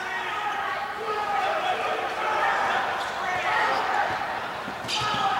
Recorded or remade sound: recorded